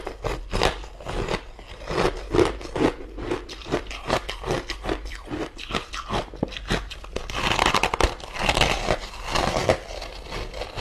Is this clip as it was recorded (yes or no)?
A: yes